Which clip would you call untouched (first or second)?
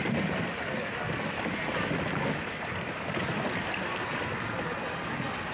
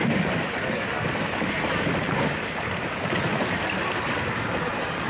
first